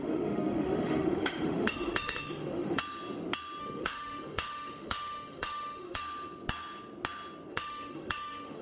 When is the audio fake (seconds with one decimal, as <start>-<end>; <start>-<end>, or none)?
0.0-2.8; 3.6-6.0; 7.5-8.6